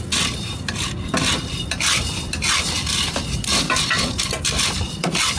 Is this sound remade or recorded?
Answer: recorded